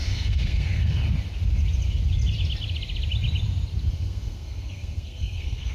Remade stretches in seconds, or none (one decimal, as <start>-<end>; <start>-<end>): 0.0-1.0; 3.9-5.7